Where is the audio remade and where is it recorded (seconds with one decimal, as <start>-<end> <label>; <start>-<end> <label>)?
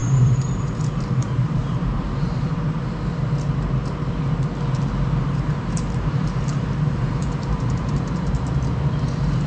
0.0-2.5 remade; 2.5-5.2 recorded; 5.2-8.6 remade; 8.6-9.5 recorded